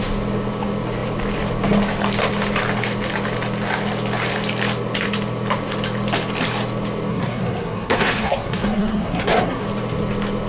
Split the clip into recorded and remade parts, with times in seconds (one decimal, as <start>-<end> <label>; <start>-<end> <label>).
0.0-7.1 recorded; 7.1-9.6 remade; 9.6-10.5 recorded